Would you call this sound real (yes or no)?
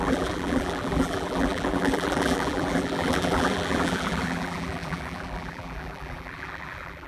no